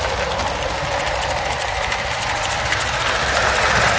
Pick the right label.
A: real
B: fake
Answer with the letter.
A